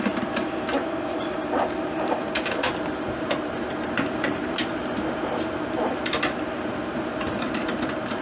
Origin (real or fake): fake